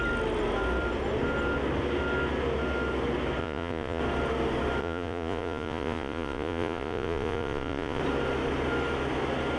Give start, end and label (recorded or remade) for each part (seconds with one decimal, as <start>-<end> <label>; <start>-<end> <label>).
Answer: 0.0-3.4 recorded; 3.4-4.0 remade; 4.0-4.8 recorded; 4.8-8.0 remade; 8.0-9.6 recorded